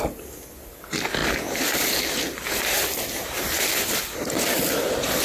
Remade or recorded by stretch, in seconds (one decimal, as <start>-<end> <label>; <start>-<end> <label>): 0.0-1.2 recorded; 1.2-4.3 remade; 4.3-5.2 recorded